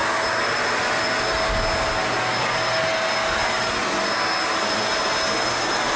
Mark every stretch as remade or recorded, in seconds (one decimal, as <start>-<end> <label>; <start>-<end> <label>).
0.0-6.0 recorded